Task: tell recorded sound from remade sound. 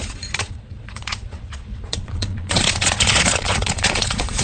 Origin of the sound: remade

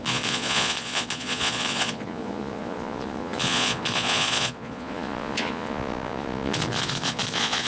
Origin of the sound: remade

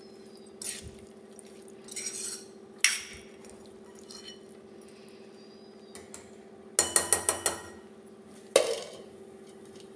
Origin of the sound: recorded